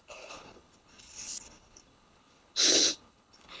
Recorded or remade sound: remade